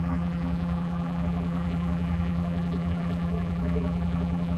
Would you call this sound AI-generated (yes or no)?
yes